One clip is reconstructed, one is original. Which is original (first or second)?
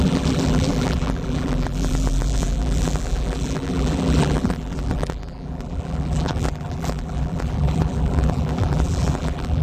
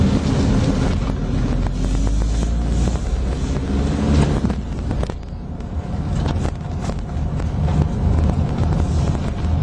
second